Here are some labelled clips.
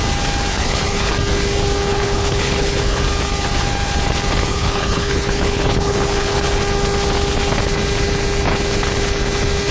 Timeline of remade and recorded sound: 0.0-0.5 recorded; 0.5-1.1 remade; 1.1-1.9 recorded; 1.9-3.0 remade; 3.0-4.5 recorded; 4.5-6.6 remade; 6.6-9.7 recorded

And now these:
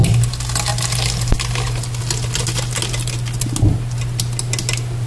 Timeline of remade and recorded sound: 0.0-5.1 recorded